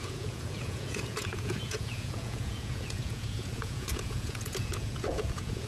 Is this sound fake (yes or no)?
yes